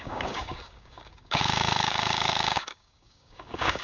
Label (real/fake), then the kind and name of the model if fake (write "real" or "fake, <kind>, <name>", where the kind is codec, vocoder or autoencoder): fake, codec, DAC